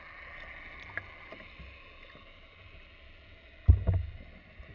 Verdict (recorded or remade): recorded